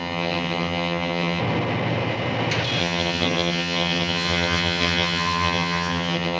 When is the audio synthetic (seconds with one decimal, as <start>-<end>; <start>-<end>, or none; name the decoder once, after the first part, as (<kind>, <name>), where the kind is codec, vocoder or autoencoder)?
0.0-1.4 (vocoder, HiFi-GAN); 2.8-6.4